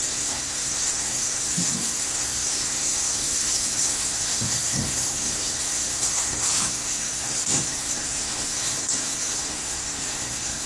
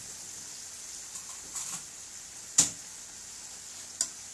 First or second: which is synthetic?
first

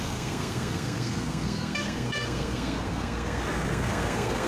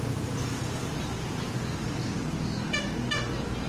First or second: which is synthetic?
first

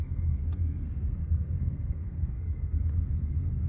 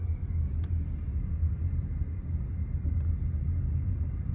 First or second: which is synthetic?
first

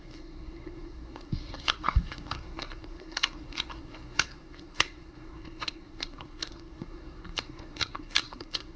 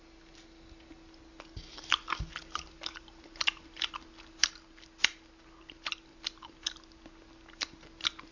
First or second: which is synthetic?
first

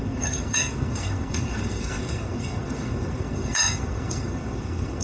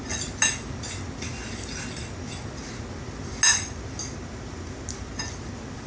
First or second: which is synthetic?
first